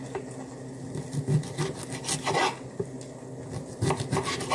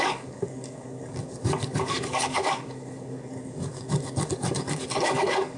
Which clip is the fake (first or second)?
second